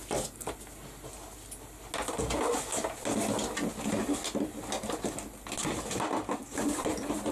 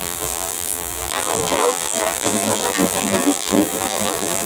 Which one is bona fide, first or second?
first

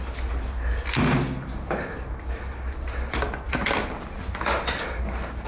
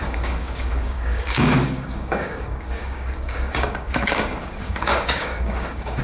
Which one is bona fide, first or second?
first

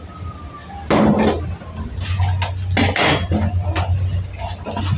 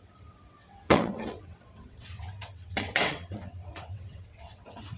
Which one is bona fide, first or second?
first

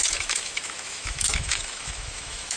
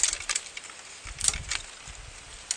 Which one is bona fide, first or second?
second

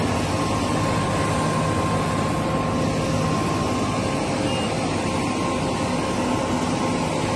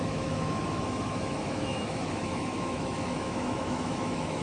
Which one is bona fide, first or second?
first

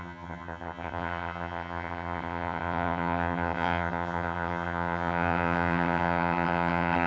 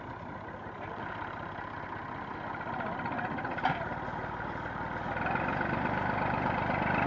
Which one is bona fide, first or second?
second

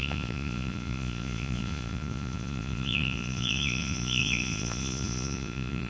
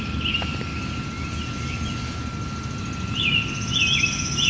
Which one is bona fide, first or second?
second